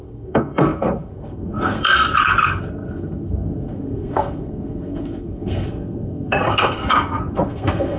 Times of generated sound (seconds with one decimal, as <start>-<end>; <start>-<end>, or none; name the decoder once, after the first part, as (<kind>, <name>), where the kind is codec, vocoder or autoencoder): 0.0-8.0 (codec, SNAC)